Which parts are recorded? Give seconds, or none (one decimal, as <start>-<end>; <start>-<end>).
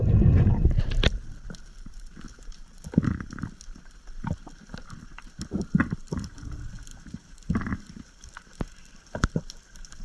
0.0-10.0